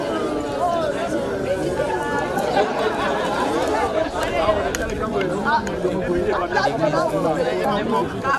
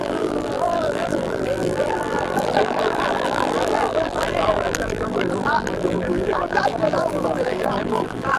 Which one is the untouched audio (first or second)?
first